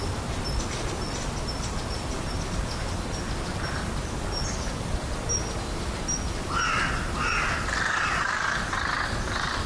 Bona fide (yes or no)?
yes